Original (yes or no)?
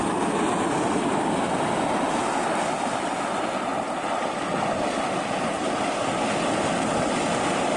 yes